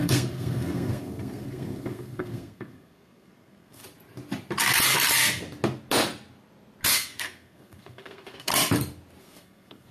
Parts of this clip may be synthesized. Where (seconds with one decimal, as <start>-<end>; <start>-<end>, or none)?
0.0-3.8; 6.9-8.5; 9.2-9.9